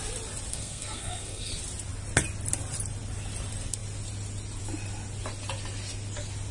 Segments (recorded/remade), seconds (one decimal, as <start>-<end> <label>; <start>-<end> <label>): 0.0-0.5 recorded; 0.5-1.5 remade; 1.5-6.5 recorded